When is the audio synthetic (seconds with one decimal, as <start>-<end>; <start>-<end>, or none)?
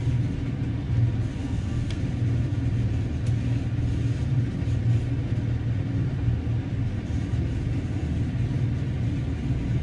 1.4-2.0